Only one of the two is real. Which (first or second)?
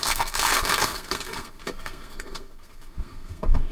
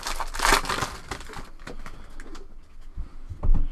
second